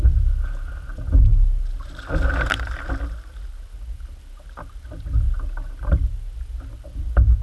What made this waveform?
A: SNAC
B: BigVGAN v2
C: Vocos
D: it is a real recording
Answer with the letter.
D